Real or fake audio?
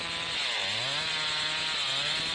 real